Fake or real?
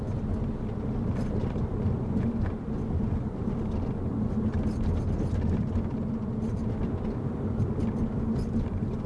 real